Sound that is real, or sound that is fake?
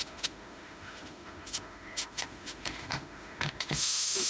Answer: fake